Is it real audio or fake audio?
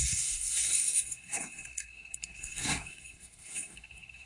fake